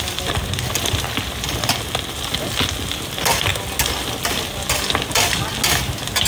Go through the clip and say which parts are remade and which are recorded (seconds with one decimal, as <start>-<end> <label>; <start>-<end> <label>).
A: 0.0-6.3 recorded